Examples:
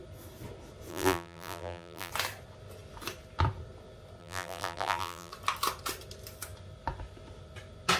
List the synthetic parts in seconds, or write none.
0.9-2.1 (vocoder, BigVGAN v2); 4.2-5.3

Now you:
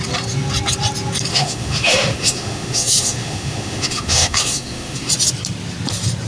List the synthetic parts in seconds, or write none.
1.3-5.1 (autoencoder, DAC-VAE)

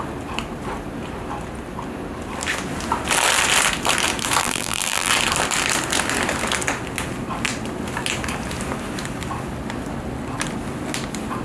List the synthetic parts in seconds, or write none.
4.4-5.1 (vocoder, BigVGAN v2)